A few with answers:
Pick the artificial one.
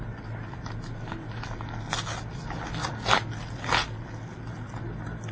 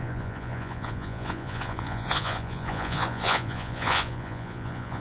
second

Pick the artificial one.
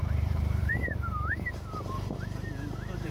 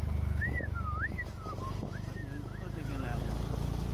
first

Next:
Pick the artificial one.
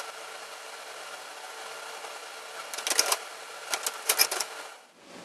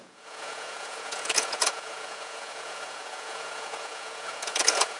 second